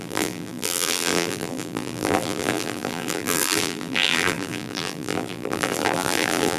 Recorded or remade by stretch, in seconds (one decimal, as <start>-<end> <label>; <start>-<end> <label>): 0.0-6.6 remade